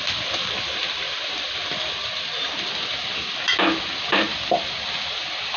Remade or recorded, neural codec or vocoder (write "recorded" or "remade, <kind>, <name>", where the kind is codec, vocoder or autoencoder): recorded